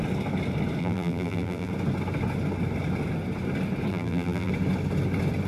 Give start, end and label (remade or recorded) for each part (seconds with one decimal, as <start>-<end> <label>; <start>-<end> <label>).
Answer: 0.0-0.8 recorded; 0.8-1.7 remade; 1.7-3.9 recorded; 3.9-4.5 remade; 4.5-5.5 recorded